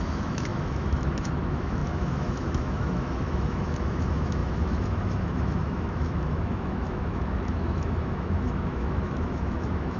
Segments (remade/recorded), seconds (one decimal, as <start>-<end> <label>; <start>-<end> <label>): 0.0-10.0 remade